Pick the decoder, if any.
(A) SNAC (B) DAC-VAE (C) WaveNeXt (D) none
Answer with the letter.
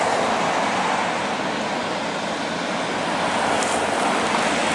D